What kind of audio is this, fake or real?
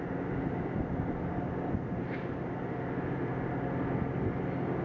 real